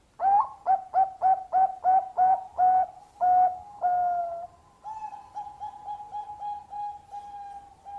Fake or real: real